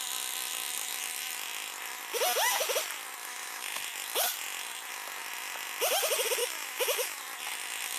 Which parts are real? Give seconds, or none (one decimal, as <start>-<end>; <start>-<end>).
0.0-3.2; 3.8-6.4; 7.2-8.0